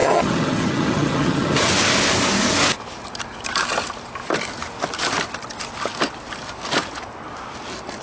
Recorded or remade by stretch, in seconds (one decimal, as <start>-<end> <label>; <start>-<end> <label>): 0.0-1.7 remade; 1.7-8.0 recorded